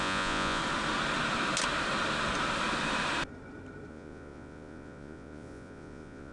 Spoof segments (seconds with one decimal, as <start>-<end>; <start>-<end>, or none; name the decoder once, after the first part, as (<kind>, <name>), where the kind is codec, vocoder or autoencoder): 0.0-0.6 (vocoder, Vocos); 3.9-6.3